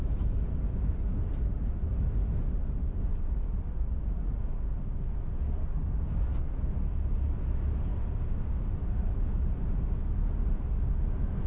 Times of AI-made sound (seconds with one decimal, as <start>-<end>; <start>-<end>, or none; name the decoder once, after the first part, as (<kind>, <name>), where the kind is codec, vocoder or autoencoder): 0.6-4.6 (vocoder, BigVGAN v2)